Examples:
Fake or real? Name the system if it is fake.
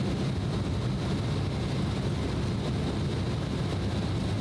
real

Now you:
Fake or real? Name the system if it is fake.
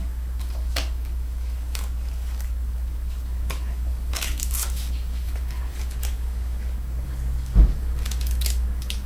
fake, codec, DAC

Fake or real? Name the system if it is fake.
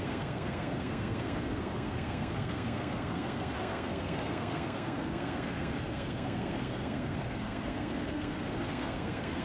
fake, codec, SNAC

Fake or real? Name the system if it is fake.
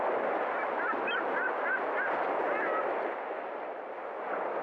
real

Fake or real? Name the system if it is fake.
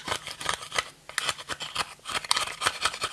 real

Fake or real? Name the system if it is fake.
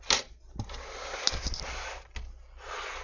real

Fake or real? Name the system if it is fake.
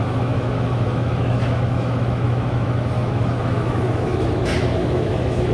fake, autoencoder, DAC-VAE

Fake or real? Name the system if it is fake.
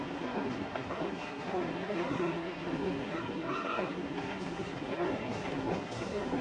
fake, codec, SNAC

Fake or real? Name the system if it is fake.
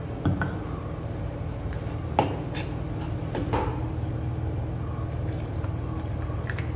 real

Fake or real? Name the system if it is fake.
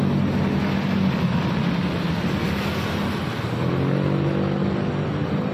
real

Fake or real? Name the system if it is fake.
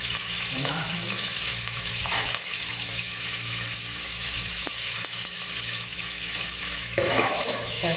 fake, autoencoder, DAC-VAE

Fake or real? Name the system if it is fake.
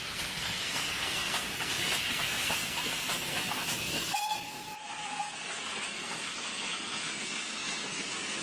fake, codec, SNAC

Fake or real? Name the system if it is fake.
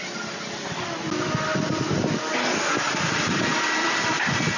real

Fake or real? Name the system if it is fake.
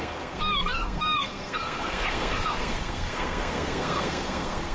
fake, codec, SNAC